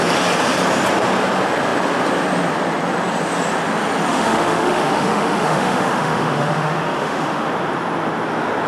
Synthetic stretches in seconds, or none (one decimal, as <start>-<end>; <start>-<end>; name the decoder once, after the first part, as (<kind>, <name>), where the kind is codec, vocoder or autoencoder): 4.1-7.5 (autoencoder, DAC-VAE)